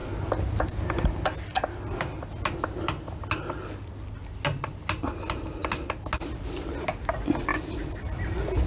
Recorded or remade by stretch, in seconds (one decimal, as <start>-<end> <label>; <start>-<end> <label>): 0.0-8.7 recorded